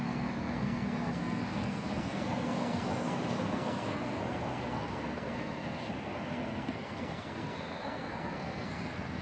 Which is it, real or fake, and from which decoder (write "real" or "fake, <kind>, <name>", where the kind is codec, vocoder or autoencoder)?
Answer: fake, codec, SNAC